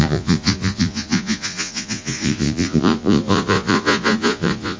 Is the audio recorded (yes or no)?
no